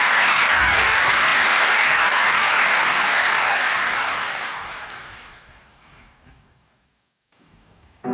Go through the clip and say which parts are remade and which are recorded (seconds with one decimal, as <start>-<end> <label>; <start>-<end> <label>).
0.0-8.1 remade